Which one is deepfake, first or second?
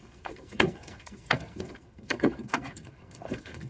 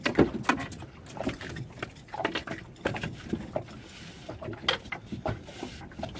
first